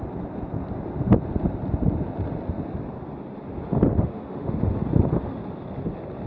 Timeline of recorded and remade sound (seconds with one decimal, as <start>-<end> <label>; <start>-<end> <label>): 0.0-3.9 recorded; 3.9-4.5 remade; 4.5-6.3 recorded